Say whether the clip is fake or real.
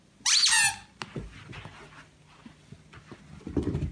real